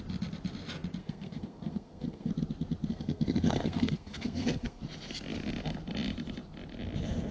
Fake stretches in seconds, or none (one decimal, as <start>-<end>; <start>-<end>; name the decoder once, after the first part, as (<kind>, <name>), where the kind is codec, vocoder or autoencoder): 1.0-2.3 (codec, SNAC); 2.9-4.8